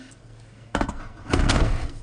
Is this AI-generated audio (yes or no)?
yes